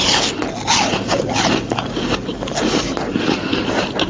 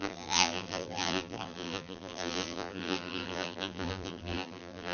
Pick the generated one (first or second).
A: second